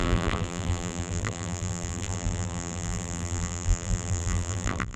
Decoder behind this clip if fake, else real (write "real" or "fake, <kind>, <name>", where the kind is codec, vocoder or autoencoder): fake, vocoder, BigVGAN v2